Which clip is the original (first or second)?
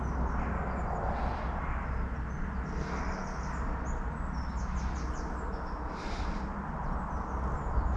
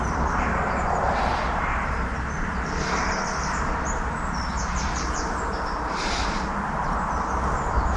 first